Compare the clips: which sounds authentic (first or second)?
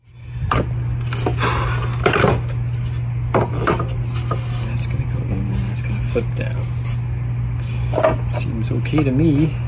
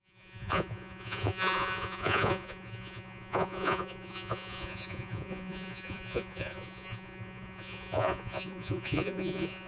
first